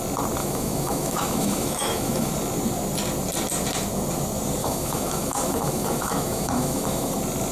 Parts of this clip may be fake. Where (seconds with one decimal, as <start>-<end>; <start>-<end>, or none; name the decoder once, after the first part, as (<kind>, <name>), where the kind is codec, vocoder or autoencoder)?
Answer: 0.4-2.3 (autoencoder, DAC-VAE); 4.6-7.1